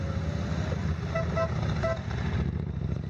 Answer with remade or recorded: recorded